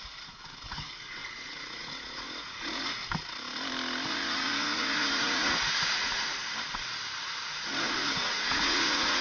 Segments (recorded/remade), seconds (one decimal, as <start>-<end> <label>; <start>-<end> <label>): 0.0-3.0 remade; 3.0-4.1 recorded; 4.1-6.4 remade; 6.4-7.5 recorded; 7.5-9.2 remade